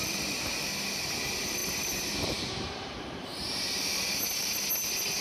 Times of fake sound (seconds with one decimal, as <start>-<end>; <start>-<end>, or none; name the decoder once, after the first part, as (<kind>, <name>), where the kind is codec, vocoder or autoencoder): 1.6-4.7 (vocoder, BigVGAN v2)